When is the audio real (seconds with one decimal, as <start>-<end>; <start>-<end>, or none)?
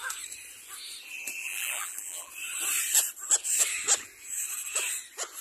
0.0-1.4; 2.3-5.4